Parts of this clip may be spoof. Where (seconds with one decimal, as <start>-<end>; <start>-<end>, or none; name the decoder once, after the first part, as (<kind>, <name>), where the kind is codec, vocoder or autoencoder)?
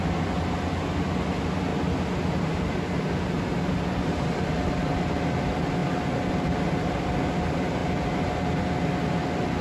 none